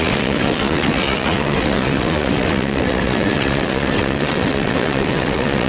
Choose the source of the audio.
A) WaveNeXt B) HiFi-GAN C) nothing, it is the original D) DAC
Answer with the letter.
A